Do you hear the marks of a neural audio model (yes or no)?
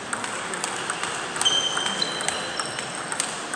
no